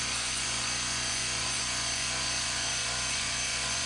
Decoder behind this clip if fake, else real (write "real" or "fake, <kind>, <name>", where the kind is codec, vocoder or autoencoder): fake, vocoder, Vocos